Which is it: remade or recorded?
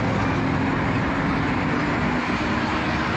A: recorded